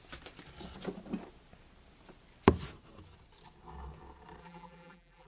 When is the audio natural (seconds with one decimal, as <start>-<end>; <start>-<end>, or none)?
0.0-4.4

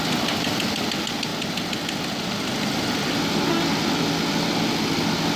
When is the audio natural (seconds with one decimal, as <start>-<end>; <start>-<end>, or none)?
0.0-5.4

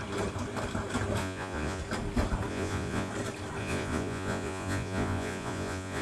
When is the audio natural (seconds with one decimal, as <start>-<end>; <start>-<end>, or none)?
0.0-1.2; 1.8-2.5; 3.1-3.6

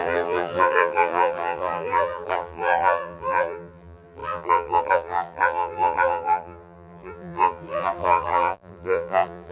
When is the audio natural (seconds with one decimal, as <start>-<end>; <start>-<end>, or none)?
none